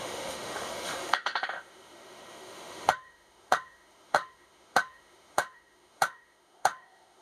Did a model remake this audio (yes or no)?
yes